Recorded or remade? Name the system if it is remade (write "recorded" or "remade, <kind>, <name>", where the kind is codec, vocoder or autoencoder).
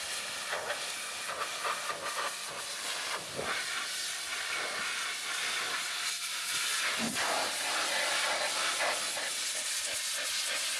recorded